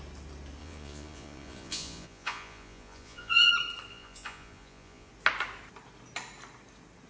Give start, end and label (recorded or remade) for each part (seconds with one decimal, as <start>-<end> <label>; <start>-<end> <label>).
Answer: 0.0-0.6 recorded; 0.6-3.5 remade; 3.5-3.9 recorded; 3.9-5.1 remade; 5.1-7.1 recorded